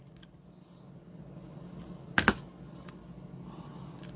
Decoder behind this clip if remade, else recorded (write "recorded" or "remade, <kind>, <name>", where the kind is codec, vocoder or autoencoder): recorded